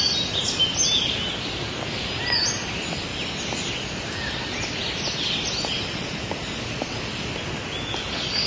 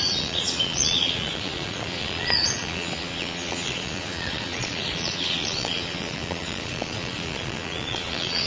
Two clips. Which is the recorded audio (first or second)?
first